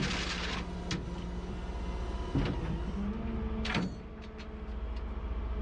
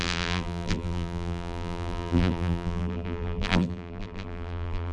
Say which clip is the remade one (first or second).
second